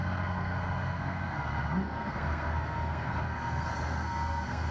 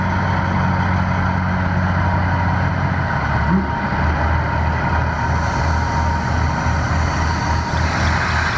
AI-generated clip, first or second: first